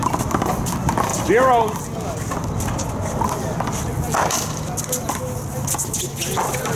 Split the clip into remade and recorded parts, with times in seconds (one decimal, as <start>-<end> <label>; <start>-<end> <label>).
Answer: 0.0-6.8 recorded